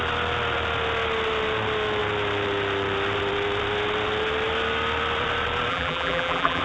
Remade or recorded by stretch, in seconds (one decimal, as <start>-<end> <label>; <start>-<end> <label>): 0.0-5.7 recorded; 5.7-6.6 remade